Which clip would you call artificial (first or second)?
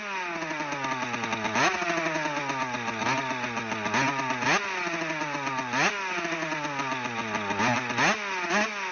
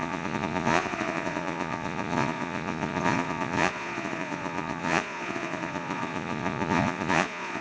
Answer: second